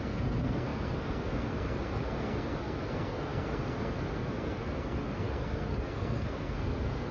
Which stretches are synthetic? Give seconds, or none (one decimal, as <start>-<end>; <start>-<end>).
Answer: 0.0-7.1